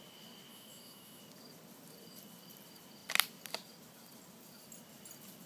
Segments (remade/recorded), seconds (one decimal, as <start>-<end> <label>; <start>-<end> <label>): 0.0-0.5 recorded; 0.5-1.2 remade; 1.2-5.5 recorded